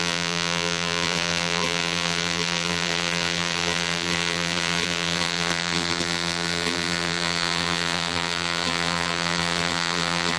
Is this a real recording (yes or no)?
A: no